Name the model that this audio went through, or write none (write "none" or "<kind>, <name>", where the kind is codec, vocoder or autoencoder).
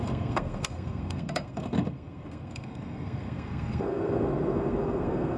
codec, SNAC